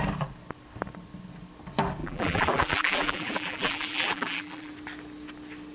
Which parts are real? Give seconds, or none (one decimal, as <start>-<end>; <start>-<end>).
0.0-2.0; 4.7-5.7